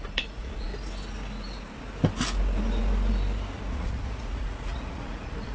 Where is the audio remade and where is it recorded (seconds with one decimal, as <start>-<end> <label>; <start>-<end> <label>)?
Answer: 0.0-0.7 remade; 0.7-3.7 recorded; 3.7-5.5 remade